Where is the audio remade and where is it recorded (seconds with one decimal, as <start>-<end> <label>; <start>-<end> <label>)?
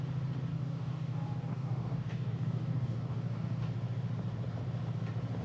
0.0-0.5 recorded; 0.5-3.6 remade; 3.6-5.4 recorded